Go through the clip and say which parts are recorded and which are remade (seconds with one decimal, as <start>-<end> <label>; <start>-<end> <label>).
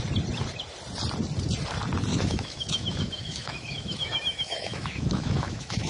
0.0-2.1 recorded; 2.1-5.9 remade